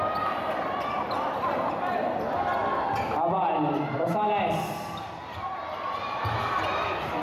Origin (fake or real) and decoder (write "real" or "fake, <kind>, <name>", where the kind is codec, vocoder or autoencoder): real